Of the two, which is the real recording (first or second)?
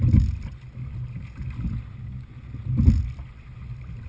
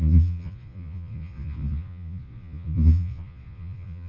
first